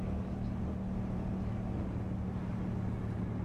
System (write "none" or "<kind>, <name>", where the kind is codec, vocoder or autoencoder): none